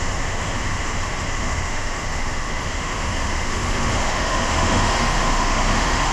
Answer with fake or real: fake